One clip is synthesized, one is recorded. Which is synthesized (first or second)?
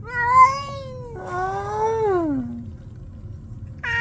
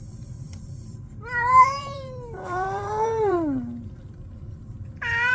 second